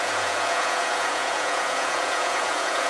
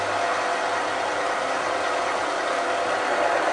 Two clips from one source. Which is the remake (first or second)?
first